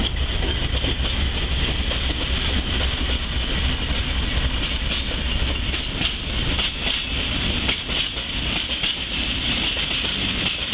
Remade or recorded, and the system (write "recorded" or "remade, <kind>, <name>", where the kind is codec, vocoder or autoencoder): recorded